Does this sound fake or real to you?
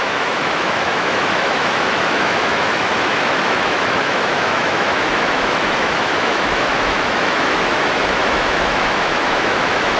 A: fake